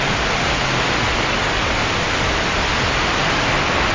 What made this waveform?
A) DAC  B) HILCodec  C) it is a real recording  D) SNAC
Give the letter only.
C